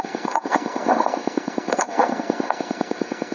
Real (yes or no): no